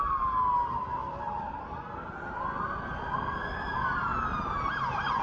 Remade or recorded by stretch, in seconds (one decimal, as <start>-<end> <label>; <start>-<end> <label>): 0.0-5.2 recorded

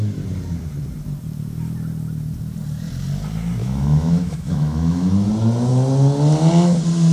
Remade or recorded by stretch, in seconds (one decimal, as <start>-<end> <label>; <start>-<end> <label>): 0.0-3.6 recorded; 3.6-5.1 remade; 5.1-7.1 recorded

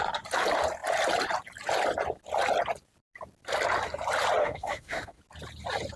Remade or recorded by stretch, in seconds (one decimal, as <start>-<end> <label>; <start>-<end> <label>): 0.0-4.4 recorded; 4.4-5.2 remade; 5.2-6.0 recorded

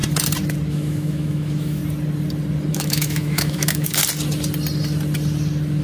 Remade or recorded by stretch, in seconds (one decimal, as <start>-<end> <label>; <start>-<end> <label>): 0.0-0.7 recorded; 0.7-1.8 remade; 1.8-2.7 recorded; 2.7-4.0 remade; 4.0-5.8 recorded

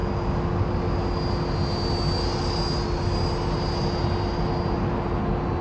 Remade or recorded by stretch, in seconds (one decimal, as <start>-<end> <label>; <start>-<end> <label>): 0.0-5.6 recorded

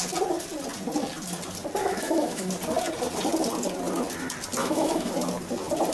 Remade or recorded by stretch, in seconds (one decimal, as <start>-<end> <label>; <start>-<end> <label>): 0.0-1.8 recorded; 1.8-2.5 remade; 2.5-4.6 recorded; 4.6-5.1 remade; 5.1-5.9 recorded

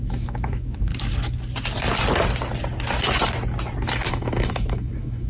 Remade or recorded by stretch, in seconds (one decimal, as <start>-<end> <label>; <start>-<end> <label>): 0.0-0.9 remade; 0.9-4.1 recorded; 4.1-5.3 remade

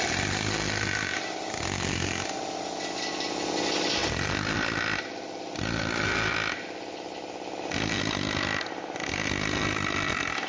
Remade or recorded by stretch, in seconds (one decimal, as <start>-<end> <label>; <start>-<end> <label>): 0.0-10.5 recorded